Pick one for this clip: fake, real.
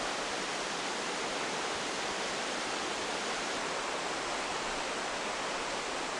real